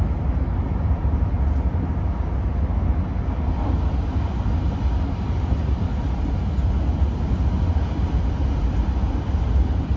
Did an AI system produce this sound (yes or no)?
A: no